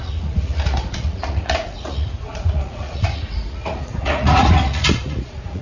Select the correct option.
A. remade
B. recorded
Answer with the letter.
A